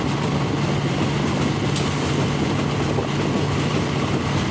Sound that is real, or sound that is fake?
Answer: real